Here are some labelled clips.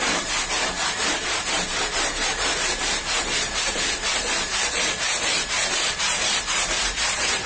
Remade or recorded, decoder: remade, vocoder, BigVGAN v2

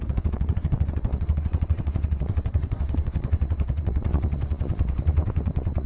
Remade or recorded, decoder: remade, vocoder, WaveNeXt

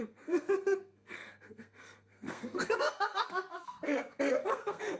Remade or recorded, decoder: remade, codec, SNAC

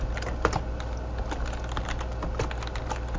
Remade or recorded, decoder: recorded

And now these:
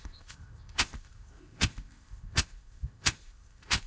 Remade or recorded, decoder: remade, codec, ZipCodec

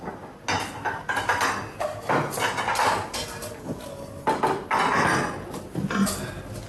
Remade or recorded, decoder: recorded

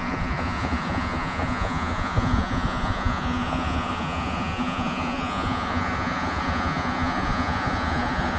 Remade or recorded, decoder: remade, vocoder, Vocos